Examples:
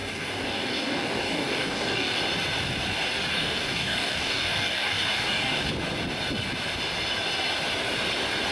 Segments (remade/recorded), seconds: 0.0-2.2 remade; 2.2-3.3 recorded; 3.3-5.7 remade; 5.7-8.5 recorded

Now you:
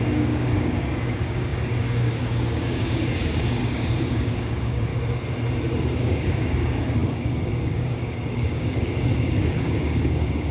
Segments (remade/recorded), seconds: 0.0-4.9 remade; 4.9-6.0 recorded; 6.0-10.5 remade

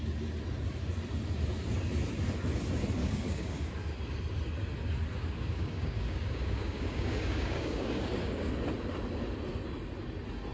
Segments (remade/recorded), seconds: 0.0-3.0 recorded; 3.0-3.7 remade; 3.7-5.1 recorded; 5.1-8.5 remade; 8.5-10.5 recorded

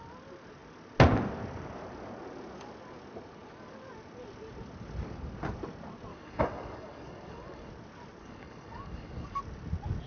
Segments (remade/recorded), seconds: 0.0-6.1 recorded; 6.1-7.7 remade; 7.7-8.2 recorded; 8.2-9.4 remade; 9.4-10.1 recorded

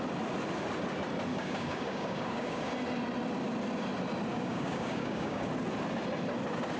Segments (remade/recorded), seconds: 0.0-1.3 recorded; 1.3-2.7 remade; 2.7-4.3 recorded; 4.3-5.5 remade; 5.5-6.8 recorded